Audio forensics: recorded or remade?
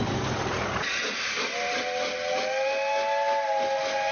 recorded